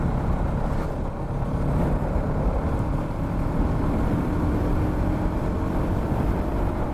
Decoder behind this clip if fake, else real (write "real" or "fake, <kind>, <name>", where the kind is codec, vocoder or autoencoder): fake, vocoder, BigVGAN v2